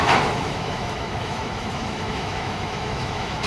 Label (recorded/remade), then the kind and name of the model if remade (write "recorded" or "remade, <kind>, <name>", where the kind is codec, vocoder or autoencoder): remade, autoencoder, DAC-VAE